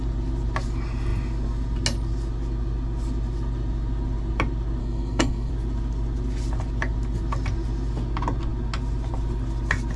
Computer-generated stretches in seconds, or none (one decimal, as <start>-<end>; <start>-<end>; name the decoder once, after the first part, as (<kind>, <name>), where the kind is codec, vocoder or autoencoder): 4.8-5.5 (codec, SNAC)